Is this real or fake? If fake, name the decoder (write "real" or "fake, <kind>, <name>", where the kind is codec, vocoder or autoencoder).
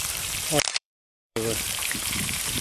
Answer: fake, vocoder, BigVGAN v2